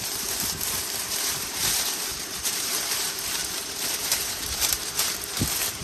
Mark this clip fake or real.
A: fake